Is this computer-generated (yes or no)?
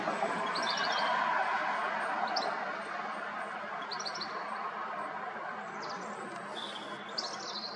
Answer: no